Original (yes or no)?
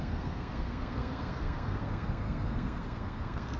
no